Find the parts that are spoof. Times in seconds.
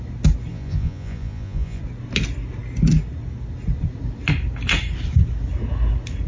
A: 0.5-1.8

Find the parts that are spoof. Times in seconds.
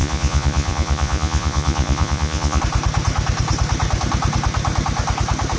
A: 0.0-2.6